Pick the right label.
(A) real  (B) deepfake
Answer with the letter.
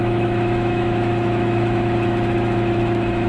B